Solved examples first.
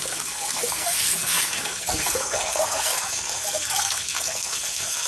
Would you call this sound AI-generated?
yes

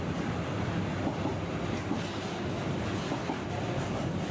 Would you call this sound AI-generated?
no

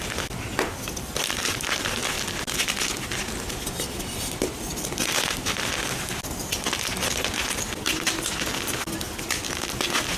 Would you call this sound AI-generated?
no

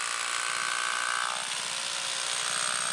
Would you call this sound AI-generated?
no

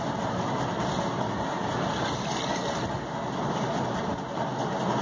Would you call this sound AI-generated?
no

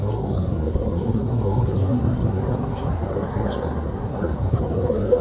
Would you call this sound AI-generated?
yes